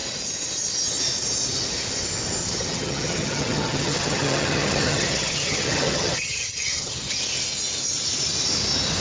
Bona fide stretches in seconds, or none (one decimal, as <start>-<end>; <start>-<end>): 0.0-2.4; 7.2-9.0

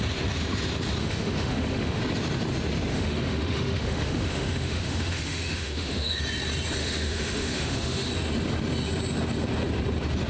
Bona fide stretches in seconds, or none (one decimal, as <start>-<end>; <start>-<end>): 0.0-1.0; 2.0-2.9; 6.2-6.8; 8.1-10.3